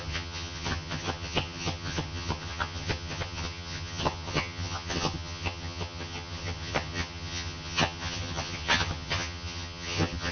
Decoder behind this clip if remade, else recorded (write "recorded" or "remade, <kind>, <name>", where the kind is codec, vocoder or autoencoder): remade, vocoder, HiFi-GAN